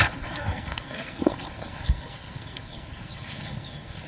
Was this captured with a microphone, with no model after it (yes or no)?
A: no